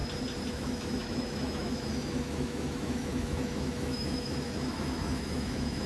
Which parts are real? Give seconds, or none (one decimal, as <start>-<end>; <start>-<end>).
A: 0.0-0.5